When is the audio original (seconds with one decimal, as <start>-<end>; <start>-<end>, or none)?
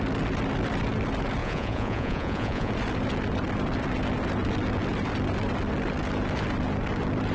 0.0-1.4; 2.7-7.3